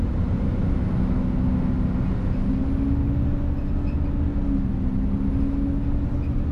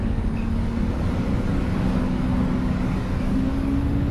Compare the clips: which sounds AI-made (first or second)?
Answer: second